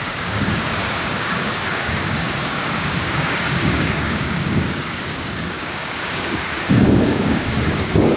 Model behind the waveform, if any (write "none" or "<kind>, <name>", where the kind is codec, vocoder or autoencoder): codec, DAC